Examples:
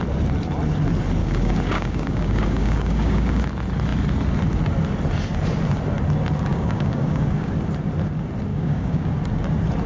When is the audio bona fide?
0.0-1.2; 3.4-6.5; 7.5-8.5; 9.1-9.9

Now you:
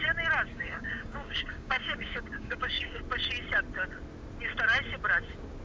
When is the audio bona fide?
0.0-0.5; 3.0-5.6

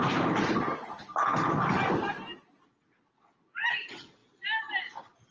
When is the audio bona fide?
0.0-5.3

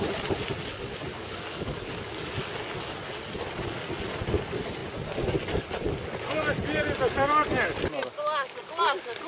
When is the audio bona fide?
0.0-1.1; 2.3-9.3